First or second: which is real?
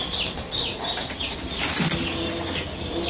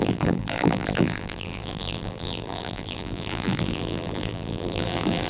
first